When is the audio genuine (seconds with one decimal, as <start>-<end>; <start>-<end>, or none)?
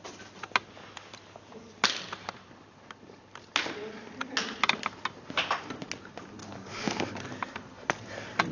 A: 0.0-6.4; 7.0-8.5